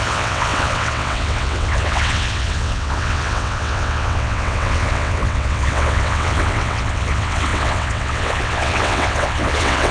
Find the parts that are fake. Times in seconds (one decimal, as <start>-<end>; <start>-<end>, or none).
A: 0.0-9.9